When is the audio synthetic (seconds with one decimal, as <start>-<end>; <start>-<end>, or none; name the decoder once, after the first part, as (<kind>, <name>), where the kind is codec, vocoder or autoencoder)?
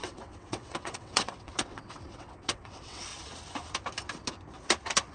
0.0-3.1 (vocoder, WaveNeXt)